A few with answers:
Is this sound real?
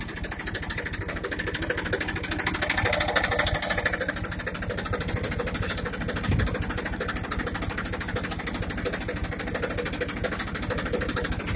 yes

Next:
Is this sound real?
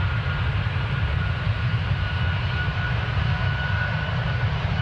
no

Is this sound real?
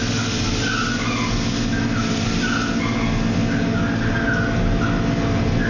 yes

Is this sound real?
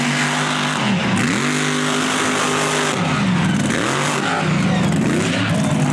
yes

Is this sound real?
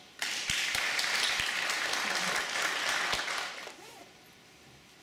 yes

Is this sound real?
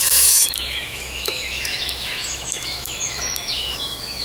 no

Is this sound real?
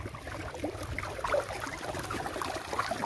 yes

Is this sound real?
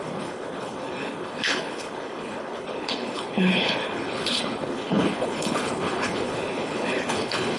no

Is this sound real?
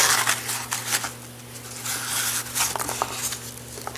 yes